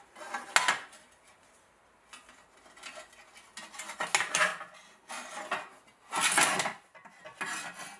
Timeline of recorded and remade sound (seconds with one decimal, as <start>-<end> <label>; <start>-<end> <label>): 0.0-6.7 recorded; 6.7-7.2 remade; 7.2-8.0 recorded